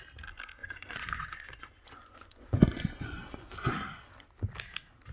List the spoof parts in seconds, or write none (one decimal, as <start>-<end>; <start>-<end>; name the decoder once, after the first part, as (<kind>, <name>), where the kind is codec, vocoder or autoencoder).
0.6-3.7 (vocoder, Vocos)